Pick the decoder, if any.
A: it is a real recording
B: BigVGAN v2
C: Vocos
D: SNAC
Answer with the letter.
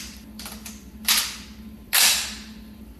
A